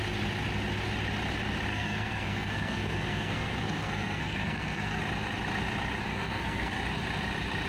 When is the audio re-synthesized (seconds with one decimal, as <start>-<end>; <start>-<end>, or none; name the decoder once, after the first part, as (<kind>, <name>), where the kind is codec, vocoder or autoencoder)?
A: 1.7-5.0 (codec, SNAC); 6.1-6.8